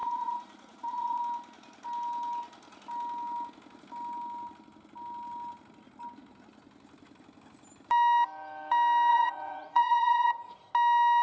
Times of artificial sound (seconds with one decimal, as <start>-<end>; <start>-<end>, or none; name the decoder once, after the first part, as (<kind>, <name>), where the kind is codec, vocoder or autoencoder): 0.0-1.2 (vocoder, Vocos); 9.1-10.7